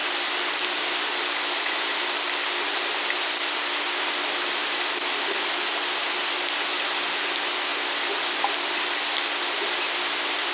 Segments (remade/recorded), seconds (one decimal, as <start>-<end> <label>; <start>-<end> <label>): 0.0-10.5 recorded

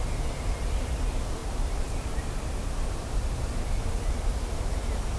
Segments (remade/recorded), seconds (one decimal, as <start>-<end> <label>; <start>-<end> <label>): 0.0-1.4 remade; 1.4-3.8 recorded; 3.8-5.2 remade

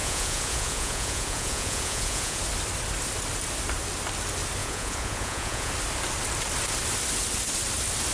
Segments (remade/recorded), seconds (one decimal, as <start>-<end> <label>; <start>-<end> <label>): 0.0-2.4 remade; 2.4-4.6 recorded; 4.6-5.7 remade; 5.7-8.1 recorded

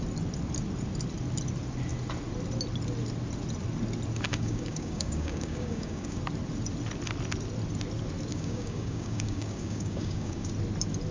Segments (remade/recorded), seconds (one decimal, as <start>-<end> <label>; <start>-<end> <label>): 0.0-4.3 recorded; 4.3-6.2 remade; 6.2-8.3 recorded; 8.3-10.5 remade; 10.5-11.1 recorded

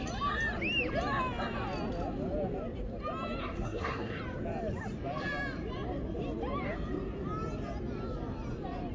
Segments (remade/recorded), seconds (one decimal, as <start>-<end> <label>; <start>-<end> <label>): 0.0-3.4 recorded; 3.4-4.2 remade; 4.2-8.9 recorded

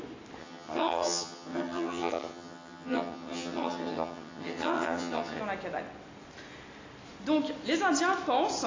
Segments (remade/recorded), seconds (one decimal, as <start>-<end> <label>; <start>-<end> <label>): 0.0-0.4 recorded; 0.4-5.4 remade; 5.4-8.7 recorded

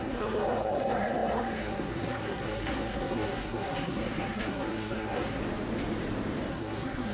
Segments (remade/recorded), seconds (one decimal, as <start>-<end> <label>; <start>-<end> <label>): 0.0-5.4 remade; 5.4-6.5 recorded; 6.5-7.1 remade

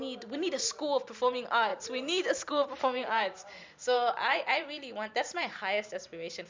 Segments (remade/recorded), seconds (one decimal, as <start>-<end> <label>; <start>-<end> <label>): 0.0-1.7 recorded; 1.7-5.6 remade; 5.6-6.5 recorded